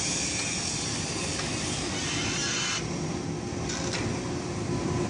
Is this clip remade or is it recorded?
recorded